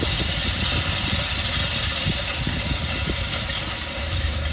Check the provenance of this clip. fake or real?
real